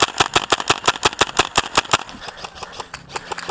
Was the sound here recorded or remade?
recorded